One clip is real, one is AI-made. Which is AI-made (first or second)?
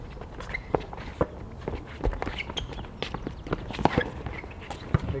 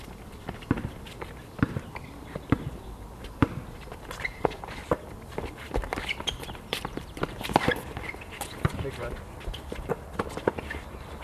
second